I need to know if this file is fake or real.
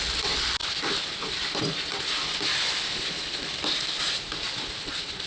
real